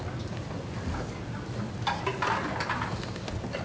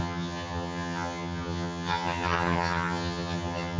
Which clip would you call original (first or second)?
first